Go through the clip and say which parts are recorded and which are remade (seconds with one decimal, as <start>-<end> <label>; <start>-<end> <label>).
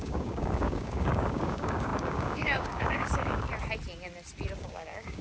0.0-3.5 remade; 3.5-4.6 recorded; 4.6-5.2 remade